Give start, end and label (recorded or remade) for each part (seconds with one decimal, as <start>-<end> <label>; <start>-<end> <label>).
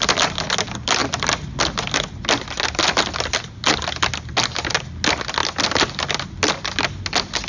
0.0-7.5 recorded